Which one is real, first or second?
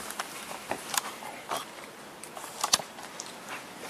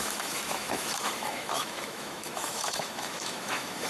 first